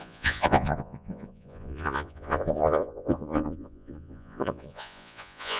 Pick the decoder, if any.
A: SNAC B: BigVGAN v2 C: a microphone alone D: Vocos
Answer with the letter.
D